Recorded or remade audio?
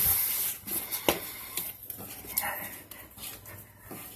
recorded